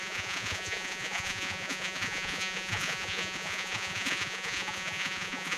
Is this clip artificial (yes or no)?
yes